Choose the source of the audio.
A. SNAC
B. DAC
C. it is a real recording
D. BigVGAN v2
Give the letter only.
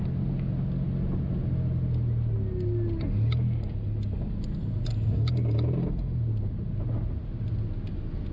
C